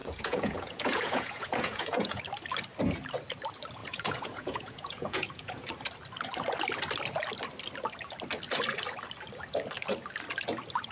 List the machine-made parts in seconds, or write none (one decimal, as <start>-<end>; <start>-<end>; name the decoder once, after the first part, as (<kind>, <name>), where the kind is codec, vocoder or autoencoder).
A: 0.0-2.2 (vocoder, Vocos); 3.8-5.7